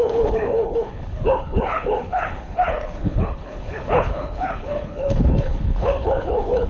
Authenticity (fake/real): fake